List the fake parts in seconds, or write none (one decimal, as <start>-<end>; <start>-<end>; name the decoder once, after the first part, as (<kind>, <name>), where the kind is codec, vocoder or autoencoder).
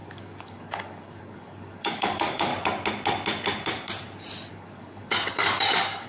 0.0-2.5 (codec, DAC); 4.5-6.1